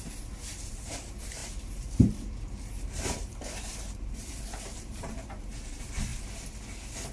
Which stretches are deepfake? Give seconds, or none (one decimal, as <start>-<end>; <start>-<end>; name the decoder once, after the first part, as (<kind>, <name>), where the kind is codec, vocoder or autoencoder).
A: 0.0-6.1 (vocoder, BigVGAN v2)